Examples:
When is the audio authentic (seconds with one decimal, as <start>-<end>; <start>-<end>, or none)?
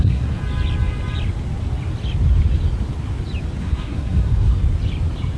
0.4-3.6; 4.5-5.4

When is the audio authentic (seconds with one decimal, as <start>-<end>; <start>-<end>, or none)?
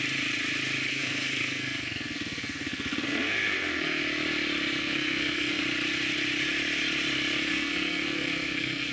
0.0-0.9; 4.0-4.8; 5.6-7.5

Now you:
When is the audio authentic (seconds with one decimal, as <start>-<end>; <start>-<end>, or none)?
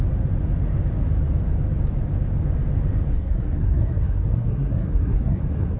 0.0-3.1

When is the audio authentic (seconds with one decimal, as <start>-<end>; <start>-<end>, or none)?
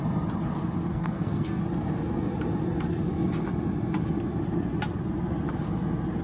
0.0-0.9; 1.6-6.2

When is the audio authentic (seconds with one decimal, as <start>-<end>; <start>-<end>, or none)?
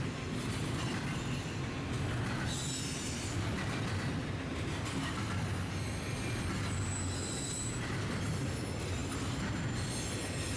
0.0-10.6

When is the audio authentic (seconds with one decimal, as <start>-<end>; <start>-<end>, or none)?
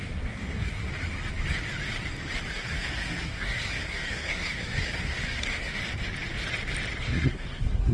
0.9-2.5; 5.8-7.0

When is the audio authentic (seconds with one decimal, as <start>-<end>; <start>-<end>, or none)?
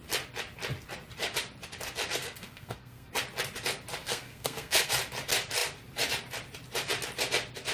0.0-2.2; 3.1-4.0; 4.9-7.7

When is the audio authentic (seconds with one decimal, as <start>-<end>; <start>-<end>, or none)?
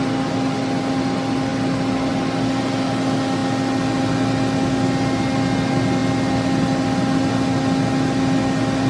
0.0-8.9